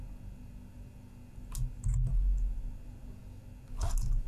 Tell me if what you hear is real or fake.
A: real